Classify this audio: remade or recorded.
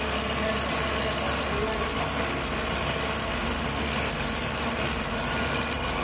recorded